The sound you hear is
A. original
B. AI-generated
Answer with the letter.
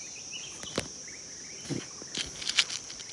A